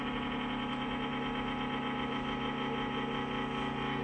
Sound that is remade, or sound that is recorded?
recorded